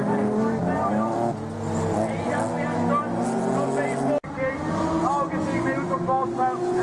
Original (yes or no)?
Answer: yes